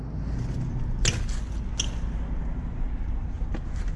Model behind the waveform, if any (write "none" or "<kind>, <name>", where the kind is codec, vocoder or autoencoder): none